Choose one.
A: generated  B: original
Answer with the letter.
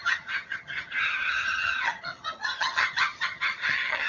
A